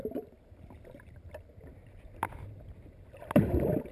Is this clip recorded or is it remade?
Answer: recorded